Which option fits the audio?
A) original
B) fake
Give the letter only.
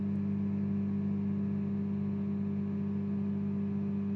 A